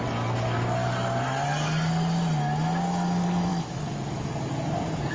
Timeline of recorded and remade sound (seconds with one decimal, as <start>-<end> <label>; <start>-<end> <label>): 0.0-3.5 recorded; 3.5-4.2 remade; 4.2-5.1 recorded